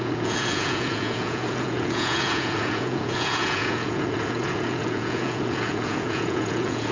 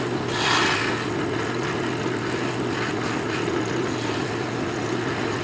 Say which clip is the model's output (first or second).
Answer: first